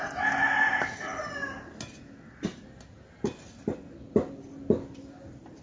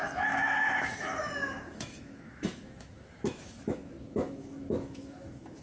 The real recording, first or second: first